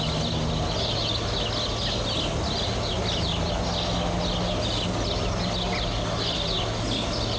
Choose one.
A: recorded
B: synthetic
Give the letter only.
A